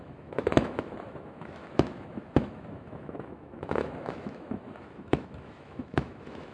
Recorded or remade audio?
remade